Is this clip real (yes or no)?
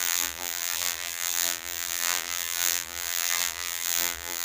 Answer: no